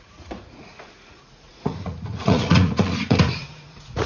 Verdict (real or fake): fake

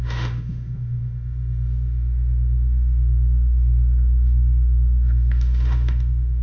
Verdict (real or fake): fake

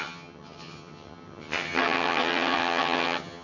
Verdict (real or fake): fake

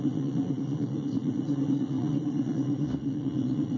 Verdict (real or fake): fake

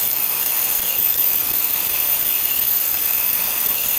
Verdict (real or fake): fake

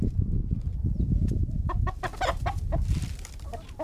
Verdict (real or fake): real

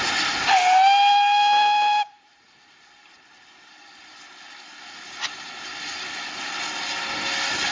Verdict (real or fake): real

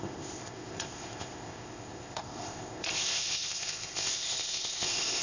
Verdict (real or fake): fake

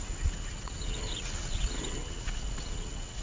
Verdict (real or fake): fake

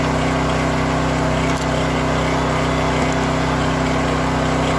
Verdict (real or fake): real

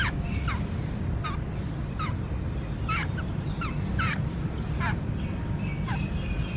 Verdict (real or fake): real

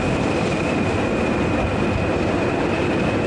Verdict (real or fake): real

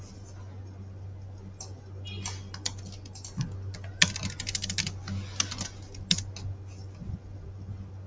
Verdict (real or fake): real